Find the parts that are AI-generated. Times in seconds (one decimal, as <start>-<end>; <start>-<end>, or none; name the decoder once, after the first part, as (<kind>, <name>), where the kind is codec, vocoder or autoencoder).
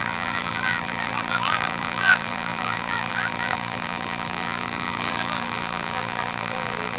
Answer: 0.0-7.0 (vocoder, BigVGAN v2)